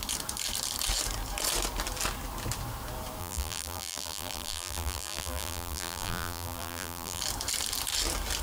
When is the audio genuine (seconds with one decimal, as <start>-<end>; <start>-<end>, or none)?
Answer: 0.0-3.2; 7.2-8.4